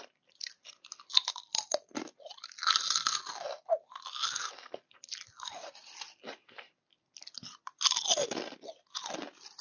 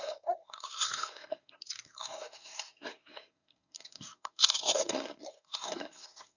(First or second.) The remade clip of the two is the second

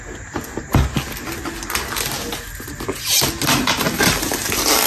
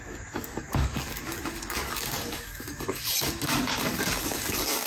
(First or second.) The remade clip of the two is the second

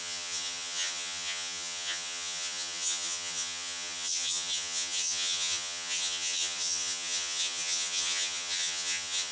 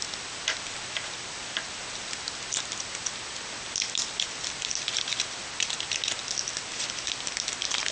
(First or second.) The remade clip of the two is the first